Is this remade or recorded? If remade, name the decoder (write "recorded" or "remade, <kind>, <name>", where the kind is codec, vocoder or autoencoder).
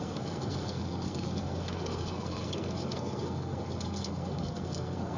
remade, codec, SNAC